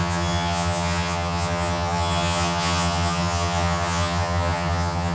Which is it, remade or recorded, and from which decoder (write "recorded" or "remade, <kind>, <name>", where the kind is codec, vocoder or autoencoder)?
remade, vocoder, HiFi-GAN